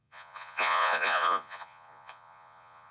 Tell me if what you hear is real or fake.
fake